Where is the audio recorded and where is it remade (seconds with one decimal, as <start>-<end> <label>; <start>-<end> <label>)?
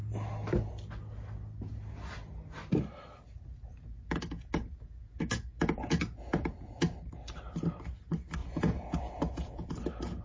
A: 0.0-3.7 recorded; 3.7-7.0 remade; 7.0-8.4 recorded; 8.4-9.7 remade; 9.7-10.2 recorded